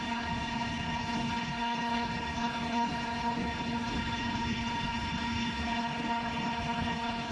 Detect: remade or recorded remade